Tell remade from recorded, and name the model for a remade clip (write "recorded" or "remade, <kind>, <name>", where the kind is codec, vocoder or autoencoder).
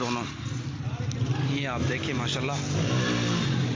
recorded